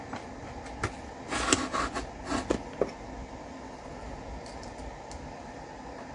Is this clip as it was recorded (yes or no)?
yes